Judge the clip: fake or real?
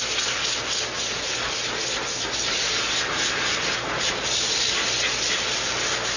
real